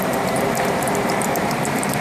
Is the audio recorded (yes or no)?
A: no